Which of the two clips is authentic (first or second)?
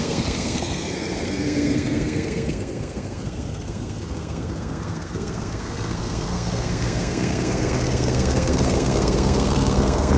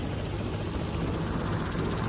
second